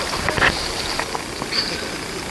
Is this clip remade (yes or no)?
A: no